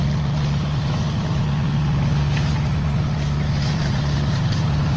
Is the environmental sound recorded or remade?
remade